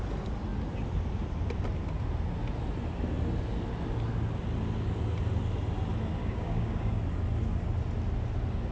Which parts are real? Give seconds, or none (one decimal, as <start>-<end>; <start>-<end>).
0.0-6.2; 7.0-8.7